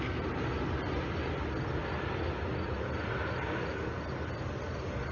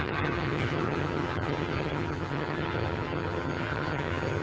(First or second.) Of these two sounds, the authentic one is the first